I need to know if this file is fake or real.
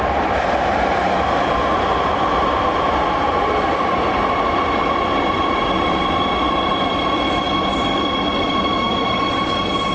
fake